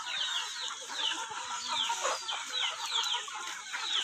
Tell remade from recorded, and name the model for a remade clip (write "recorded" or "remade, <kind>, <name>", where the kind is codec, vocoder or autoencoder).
recorded